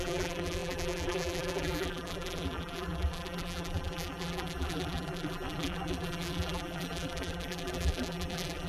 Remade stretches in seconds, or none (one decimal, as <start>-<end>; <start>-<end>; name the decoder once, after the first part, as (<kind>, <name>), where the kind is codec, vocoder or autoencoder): 0.0-8.7 (vocoder, BigVGAN v2)